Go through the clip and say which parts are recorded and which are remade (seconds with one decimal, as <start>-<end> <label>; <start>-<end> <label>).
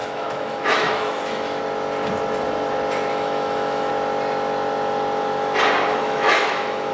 0.0-1.6 remade; 1.6-3.1 recorded; 3.1-3.9 remade; 3.9-5.9 recorded; 5.9-6.9 remade